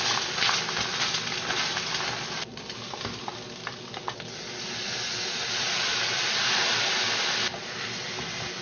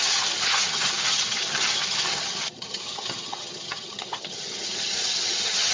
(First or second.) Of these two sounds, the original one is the first